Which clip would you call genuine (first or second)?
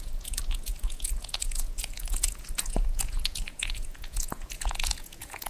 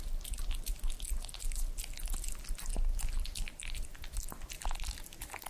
second